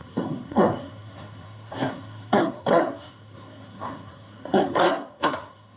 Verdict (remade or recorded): remade